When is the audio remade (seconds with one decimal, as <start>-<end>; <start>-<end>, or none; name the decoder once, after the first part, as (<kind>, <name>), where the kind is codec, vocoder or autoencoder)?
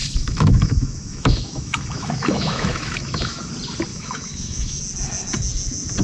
0.0-3.5 (autoencoder, DAC-VAE); 3.9-4.8